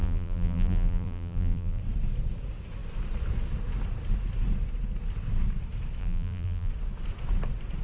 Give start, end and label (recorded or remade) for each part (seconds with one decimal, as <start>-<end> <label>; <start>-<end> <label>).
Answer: 0.0-1.8 remade; 1.8-6.0 recorded; 6.0-6.7 remade; 6.7-7.8 recorded